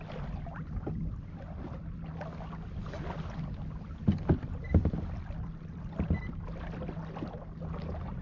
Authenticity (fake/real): real